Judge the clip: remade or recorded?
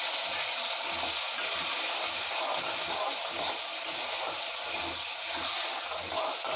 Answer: recorded